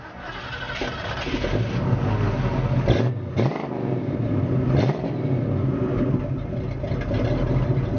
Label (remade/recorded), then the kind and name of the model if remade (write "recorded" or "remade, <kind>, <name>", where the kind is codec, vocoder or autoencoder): recorded